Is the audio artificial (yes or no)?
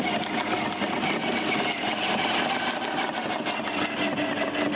no